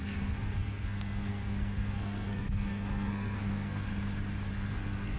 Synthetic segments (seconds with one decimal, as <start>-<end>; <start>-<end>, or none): 0.0-3.9; 4.5-5.2

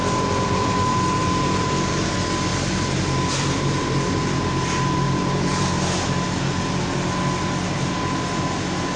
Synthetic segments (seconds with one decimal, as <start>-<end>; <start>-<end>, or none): 1.2-2.1; 2.5-5.8